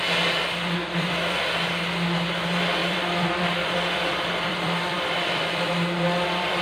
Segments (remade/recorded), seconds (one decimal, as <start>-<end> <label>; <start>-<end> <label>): 0.0-0.8 recorded; 0.8-1.5 remade; 1.5-2.8 recorded; 2.8-6.6 remade